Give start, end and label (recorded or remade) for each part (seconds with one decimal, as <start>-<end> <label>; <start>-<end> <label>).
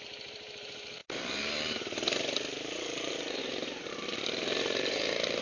0.0-5.4 remade